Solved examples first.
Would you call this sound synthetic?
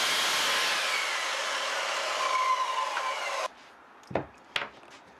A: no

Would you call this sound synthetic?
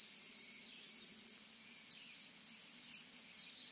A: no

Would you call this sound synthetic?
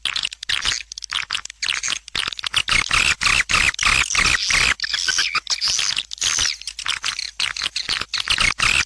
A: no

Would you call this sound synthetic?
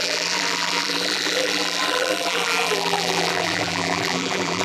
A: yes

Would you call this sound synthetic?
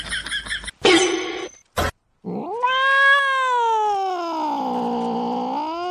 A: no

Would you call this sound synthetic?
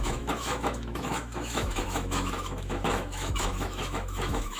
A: yes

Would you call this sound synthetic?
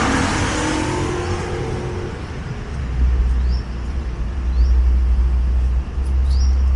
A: no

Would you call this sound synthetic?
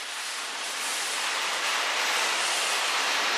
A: no